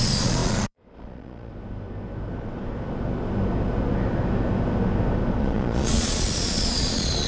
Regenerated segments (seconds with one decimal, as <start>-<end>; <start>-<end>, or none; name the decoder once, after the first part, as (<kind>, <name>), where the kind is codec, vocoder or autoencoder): 0.0-1.5 (vocoder, Vocos); 5.4-7.3